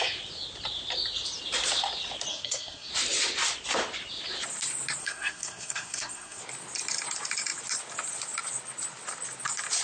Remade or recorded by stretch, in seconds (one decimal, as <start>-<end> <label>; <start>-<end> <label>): 0.0-2.3 recorded; 2.3-2.9 remade; 2.9-5.0 recorded; 5.0-6.4 remade; 6.4-9.8 recorded